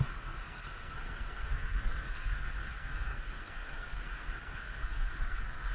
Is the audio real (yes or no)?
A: no